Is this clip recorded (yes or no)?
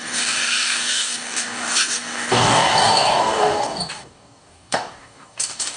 no